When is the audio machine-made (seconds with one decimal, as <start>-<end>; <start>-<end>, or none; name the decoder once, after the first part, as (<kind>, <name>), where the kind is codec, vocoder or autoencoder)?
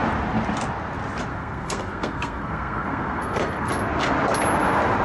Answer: 1.3-3.7 (codec, SNAC)